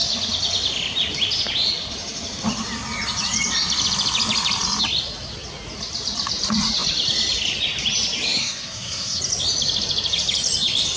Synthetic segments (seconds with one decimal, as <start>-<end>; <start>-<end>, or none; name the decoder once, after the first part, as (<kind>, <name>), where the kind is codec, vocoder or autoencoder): 8.4-9.2 (codec, SNAC)

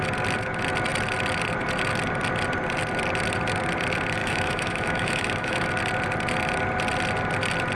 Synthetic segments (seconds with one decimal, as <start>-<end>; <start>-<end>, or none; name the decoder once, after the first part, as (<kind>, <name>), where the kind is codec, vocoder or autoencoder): 4.2-5.7 (autoencoder, DAC-VAE)

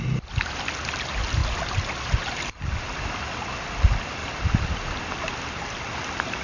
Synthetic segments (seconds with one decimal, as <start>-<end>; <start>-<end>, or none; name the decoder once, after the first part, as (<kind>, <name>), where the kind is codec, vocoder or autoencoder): none